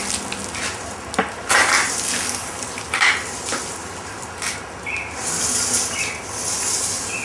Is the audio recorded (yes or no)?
yes